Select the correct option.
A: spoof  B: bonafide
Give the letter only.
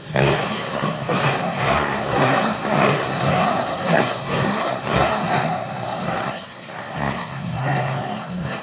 A